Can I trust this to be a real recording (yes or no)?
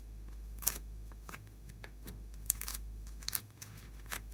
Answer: no